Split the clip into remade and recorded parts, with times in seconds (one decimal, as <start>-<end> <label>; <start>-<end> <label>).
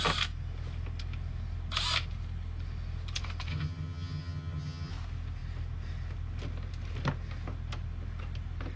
0.0-3.5 recorded; 3.5-4.9 remade; 4.9-8.8 recorded